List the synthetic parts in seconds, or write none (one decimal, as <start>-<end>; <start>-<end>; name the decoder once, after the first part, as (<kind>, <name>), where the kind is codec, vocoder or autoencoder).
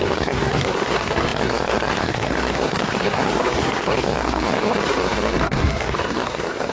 0.0-6.7 (codec, SNAC)